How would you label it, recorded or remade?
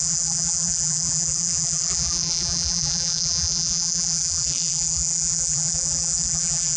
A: remade